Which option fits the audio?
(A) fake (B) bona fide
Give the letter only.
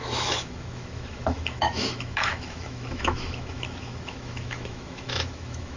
A